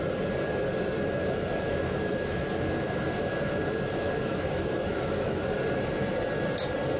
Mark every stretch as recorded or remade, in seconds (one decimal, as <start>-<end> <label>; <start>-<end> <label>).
0.0-1.2 recorded; 1.2-5.4 remade; 5.4-7.0 recorded

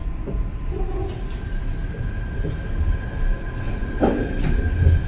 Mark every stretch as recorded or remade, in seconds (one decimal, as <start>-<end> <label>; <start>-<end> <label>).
0.0-5.1 recorded

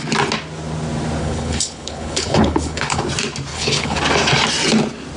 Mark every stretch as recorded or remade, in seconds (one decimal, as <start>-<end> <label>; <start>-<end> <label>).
0.0-1.2 recorded; 1.2-3.0 remade; 3.0-3.5 recorded; 3.5-4.0 remade; 4.0-5.2 recorded

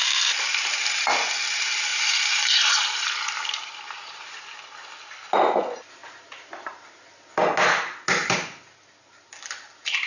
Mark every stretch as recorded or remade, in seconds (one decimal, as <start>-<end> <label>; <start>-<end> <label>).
0.0-1.9 recorded; 1.9-4.4 remade; 4.4-10.1 recorded

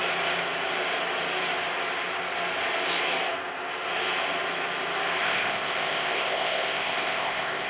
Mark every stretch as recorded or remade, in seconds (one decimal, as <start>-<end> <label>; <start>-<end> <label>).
0.0-5.2 recorded; 5.2-7.7 remade

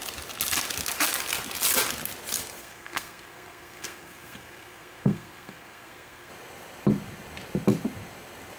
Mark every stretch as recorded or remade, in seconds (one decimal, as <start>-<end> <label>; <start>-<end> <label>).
0.0-2.6 recorded; 2.6-6.3 remade; 6.3-8.6 recorded

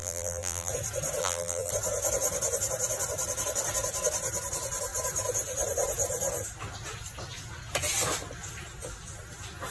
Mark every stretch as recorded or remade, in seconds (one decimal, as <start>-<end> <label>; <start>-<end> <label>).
0.0-0.7 remade; 0.7-1.2 recorded; 1.2-1.7 remade; 1.7-9.7 recorded

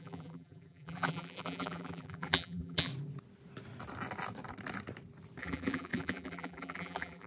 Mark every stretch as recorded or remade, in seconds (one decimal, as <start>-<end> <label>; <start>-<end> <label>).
0.0-2.9 remade; 2.9-5.4 recorded; 5.4-7.3 remade